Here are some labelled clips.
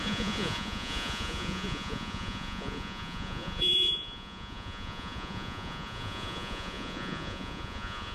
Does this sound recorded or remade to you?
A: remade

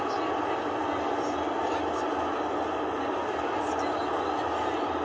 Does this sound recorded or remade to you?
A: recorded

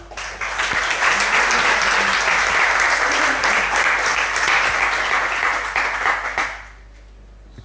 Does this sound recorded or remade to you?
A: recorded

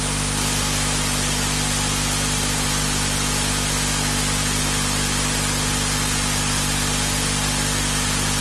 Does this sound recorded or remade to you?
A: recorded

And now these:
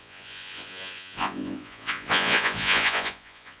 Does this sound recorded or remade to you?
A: remade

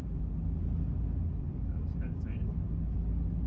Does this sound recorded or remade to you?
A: recorded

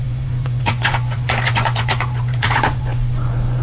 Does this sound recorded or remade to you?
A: remade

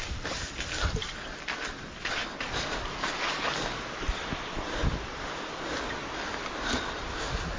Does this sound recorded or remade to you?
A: recorded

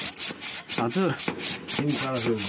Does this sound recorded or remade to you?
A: recorded